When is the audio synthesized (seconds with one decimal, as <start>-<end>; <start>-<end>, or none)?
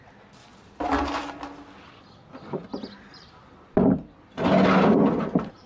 0.5-1.2; 3.8-4.4